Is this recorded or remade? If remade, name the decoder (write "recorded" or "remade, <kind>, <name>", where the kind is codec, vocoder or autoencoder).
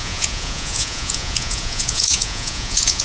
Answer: remade, vocoder, Vocos